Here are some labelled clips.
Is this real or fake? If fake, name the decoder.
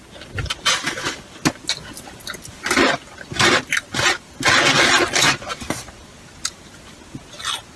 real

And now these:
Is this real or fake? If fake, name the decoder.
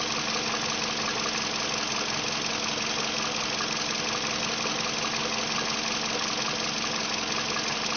real